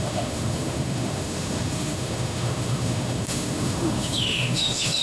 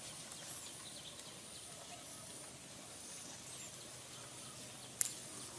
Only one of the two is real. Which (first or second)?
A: second